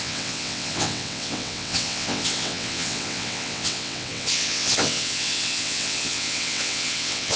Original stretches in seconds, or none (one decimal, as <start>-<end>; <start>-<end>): none